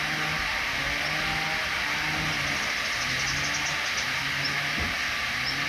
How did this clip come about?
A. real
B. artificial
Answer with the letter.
A